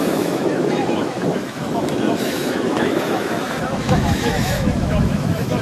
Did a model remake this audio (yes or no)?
yes